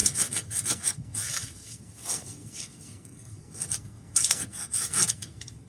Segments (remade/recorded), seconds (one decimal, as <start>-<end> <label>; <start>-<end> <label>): 0.0-5.7 remade